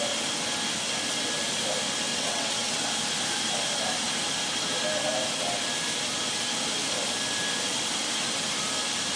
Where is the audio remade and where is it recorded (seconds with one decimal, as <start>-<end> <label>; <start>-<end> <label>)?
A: 0.0-2.1 recorded; 2.1-2.9 remade; 2.9-9.2 recorded